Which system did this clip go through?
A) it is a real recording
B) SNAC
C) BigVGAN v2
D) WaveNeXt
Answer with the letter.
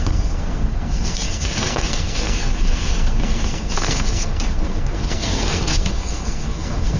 B